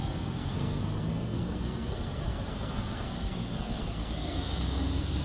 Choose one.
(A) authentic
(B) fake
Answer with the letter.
B